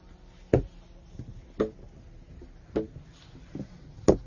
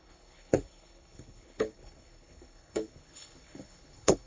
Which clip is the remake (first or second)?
second